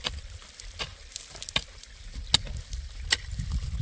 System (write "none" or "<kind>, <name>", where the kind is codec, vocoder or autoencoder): none